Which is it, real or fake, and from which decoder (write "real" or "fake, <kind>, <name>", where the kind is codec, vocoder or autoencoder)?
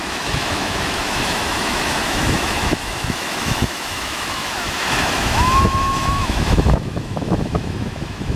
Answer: fake, autoencoder, DAC-VAE